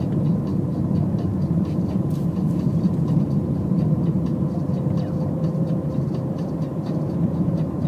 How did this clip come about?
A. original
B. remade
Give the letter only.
B